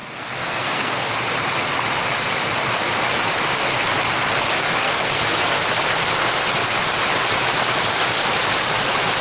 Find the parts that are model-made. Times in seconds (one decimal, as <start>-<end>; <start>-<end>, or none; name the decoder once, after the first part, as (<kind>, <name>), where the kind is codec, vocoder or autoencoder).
0.0-1.1 (codec, SNAC); 4.6-5.6